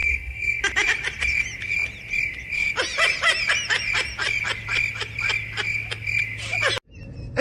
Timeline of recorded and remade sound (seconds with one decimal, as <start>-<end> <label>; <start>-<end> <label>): 0.0-0.6 remade; 0.6-7.4 recorded